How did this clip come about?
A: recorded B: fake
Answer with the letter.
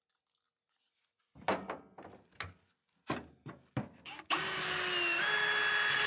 A